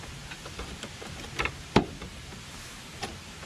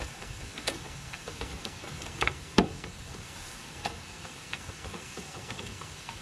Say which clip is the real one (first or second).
first